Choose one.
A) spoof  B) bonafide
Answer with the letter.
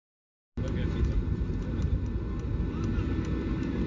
B